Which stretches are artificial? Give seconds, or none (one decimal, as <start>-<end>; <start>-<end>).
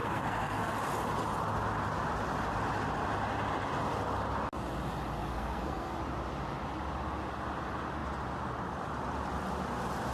0.0-0.7; 5.2-6.0